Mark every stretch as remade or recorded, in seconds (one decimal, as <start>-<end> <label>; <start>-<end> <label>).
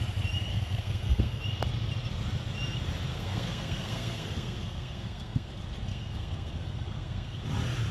0.0-0.5 recorded; 0.5-1.4 remade; 1.4-3.1 recorded; 3.1-5.5 remade; 5.5-5.9 recorded; 5.9-7.4 remade; 7.4-7.9 recorded